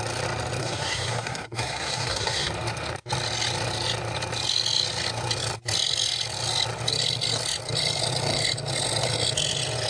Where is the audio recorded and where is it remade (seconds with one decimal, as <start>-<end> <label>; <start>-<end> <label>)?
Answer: 0.0-0.6 recorded; 0.6-2.5 remade; 2.5-9.9 recorded